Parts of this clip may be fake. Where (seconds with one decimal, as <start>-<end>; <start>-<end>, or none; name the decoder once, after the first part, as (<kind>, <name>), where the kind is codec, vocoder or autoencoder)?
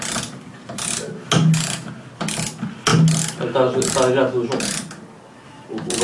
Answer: none